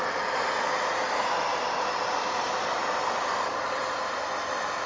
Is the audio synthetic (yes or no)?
no